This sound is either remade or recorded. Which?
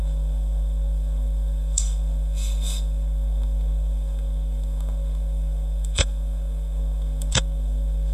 remade